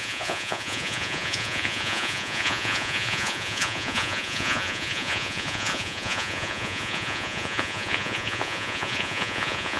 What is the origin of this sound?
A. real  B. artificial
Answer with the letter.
B